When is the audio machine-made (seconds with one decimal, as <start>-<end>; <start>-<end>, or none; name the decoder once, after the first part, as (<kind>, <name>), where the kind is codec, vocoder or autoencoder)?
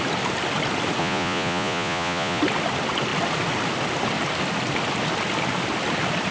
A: 1.0-2.4 (vocoder, Vocos)